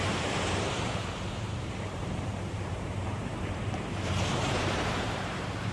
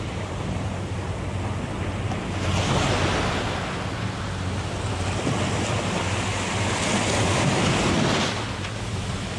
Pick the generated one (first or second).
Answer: first